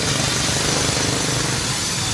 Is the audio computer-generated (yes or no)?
no